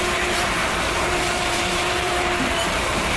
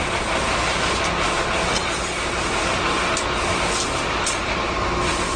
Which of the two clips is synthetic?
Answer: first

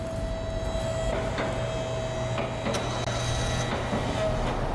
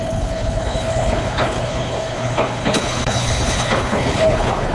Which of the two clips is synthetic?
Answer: second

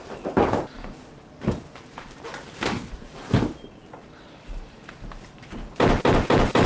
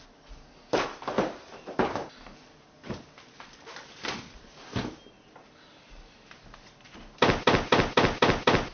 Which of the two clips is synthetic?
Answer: first